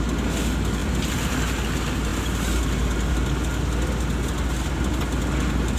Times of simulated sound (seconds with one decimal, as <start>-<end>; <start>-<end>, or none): none